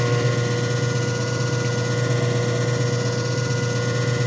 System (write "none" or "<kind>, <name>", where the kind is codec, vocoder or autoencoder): none